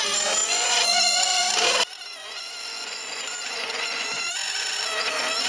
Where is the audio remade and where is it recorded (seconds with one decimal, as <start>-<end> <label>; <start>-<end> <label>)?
0.0-0.4 recorded; 0.4-1.4 remade; 1.4-2.1 recorded; 2.1-4.8 remade; 4.8-5.5 recorded